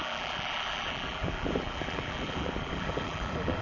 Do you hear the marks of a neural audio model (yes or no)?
yes